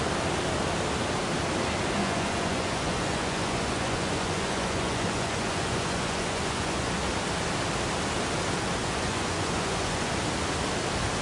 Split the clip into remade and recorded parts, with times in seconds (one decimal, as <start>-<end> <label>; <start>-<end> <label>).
0.0-2.0 recorded; 2.0-6.9 remade; 6.9-8.8 recorded; 8.8-10.1 remade; 10.1-11.2 recorded